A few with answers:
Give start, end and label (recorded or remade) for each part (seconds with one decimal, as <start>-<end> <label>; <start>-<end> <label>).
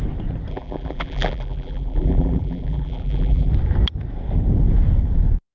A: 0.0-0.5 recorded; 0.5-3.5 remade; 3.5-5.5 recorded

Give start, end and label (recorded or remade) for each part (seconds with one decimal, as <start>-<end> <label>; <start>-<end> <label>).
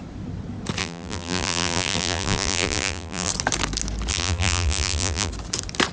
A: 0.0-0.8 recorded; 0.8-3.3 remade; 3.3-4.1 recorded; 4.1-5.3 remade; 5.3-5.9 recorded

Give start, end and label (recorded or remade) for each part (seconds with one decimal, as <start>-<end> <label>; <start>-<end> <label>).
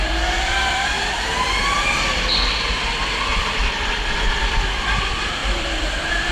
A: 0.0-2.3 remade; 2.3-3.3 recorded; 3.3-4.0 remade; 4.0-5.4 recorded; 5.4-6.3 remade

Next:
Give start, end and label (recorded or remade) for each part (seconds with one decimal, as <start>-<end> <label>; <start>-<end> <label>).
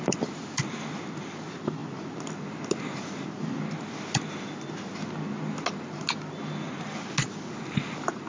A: 0.0-8.3 recorded